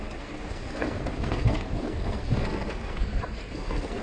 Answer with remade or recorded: remade